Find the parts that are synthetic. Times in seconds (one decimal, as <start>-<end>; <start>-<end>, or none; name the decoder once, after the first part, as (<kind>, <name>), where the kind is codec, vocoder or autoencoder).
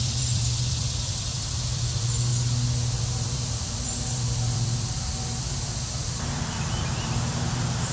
0.0-2.3 (vocoder, BigVGAN v2); 3.0-5.1; 6.0-7.9